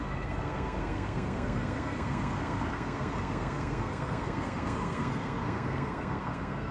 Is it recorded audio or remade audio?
remade